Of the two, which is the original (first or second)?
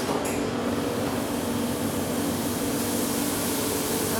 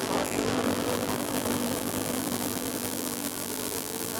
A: first